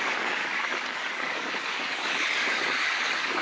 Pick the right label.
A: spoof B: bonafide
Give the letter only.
A